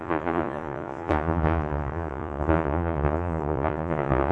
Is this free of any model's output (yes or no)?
no